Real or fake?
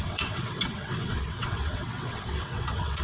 fake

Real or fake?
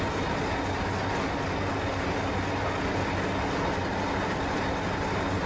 real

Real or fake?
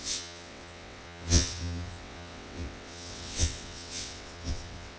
fake